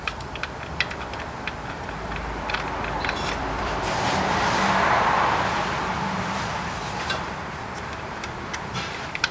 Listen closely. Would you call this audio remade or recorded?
remade